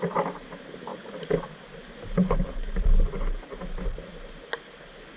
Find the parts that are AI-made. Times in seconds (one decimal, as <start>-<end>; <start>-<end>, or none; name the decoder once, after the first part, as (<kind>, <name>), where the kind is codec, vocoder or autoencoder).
0.9-1.4 (vocoder, BigVGAN v2)